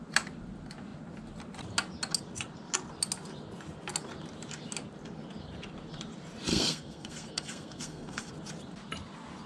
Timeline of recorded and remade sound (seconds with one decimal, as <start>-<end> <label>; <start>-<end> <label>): 0.0-6.5 recorded; 6.5-8.3 remade; 8.3-9.5 recorded